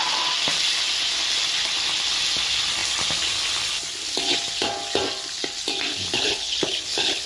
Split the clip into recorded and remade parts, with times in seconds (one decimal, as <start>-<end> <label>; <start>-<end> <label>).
0.0-5.9 recorded; 5.9-7.3 remade